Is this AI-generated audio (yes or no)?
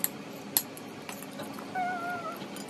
no